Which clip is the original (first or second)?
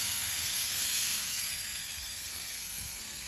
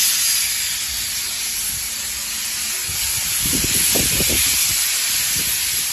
second